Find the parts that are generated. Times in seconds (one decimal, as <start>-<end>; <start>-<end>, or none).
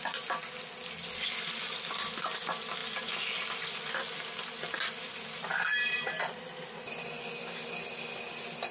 none